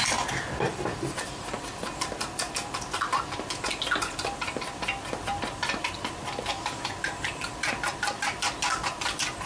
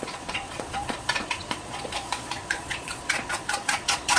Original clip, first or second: first